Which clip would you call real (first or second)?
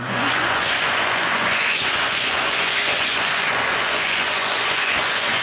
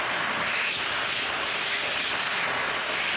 second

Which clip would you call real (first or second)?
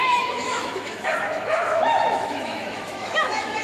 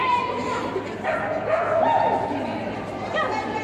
second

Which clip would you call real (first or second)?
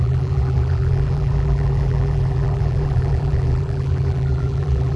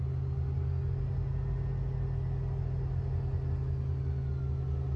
second